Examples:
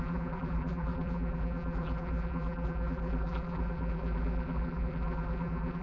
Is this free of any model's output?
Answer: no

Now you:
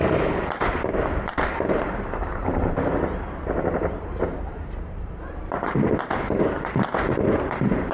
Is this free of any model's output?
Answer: no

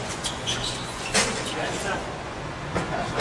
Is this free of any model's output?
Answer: no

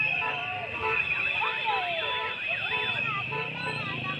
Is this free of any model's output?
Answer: no